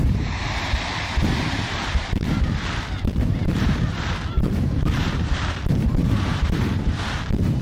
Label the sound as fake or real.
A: fake